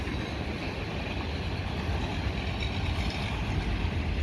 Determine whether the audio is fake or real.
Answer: real